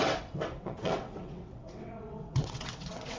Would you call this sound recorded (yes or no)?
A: no